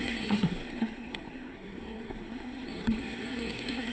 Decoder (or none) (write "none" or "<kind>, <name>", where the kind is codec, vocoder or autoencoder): codec, SNAC